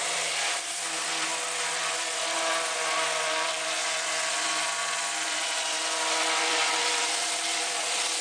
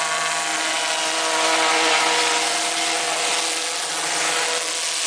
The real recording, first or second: second